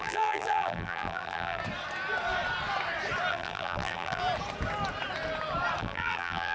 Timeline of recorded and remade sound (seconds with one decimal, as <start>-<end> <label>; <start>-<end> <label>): 0.0-1.6 remade; 1.6-3.3 recorded; 3.3-4.2 remade; 4.2-5.8 recorded; 5.8-6.5 remade